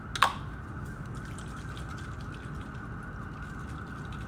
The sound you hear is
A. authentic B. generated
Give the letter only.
A